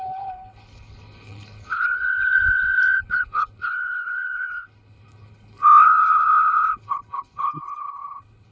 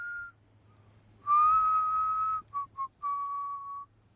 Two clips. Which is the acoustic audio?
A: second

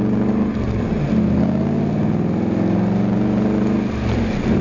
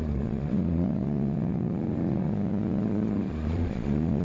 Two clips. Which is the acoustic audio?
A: first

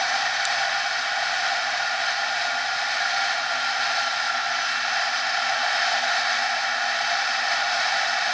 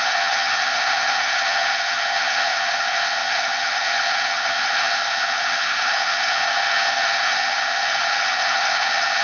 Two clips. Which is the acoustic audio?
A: first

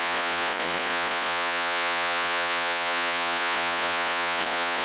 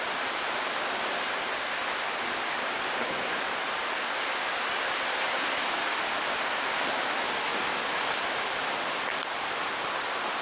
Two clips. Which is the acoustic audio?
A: second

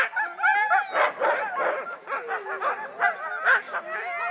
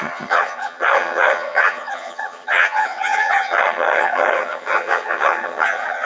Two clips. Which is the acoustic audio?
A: first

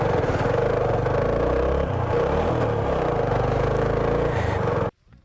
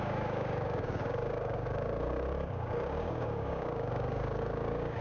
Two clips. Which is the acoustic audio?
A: first